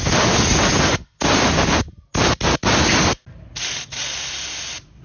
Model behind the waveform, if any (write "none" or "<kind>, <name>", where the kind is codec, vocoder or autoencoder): none